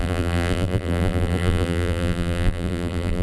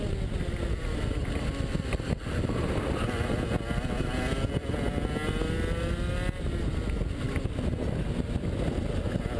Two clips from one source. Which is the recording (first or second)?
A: second